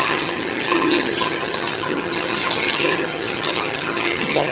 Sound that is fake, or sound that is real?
fake